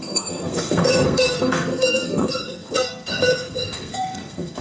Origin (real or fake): fake